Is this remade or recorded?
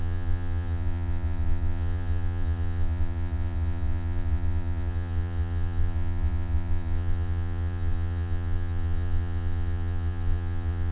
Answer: remade